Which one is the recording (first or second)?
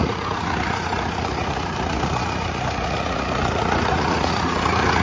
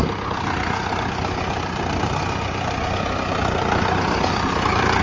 second